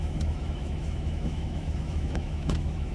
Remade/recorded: remade